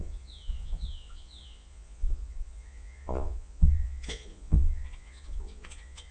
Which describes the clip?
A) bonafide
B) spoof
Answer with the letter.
B